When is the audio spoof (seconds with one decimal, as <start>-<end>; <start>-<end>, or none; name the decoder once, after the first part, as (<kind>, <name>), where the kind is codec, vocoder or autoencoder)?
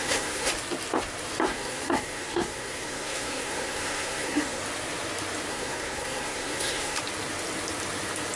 0.0-0.5 (codec, SNAC); 1.5-4.6; 5.5-7.0